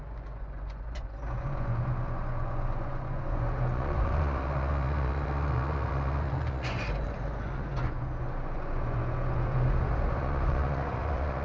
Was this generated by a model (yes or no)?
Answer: yes